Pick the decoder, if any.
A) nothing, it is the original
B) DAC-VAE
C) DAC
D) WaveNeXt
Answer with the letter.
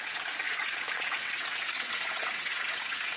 D